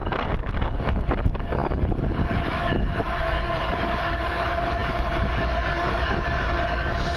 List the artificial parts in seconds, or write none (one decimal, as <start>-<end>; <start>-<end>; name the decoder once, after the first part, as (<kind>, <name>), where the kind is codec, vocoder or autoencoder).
0.0-7.2 (codec, DAC)